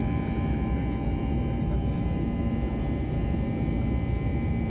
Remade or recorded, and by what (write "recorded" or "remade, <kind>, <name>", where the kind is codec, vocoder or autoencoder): remade, vocoder, BigVGAN v2